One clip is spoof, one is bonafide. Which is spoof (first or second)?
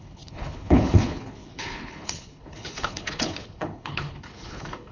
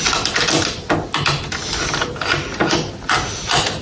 first